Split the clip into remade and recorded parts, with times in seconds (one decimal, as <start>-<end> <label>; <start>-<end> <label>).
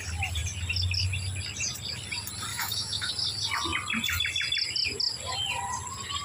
0.0-2.5 recorded; 2.5-3.1 remade; 3.1-6.2 recorded